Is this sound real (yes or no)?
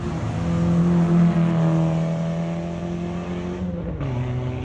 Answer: yes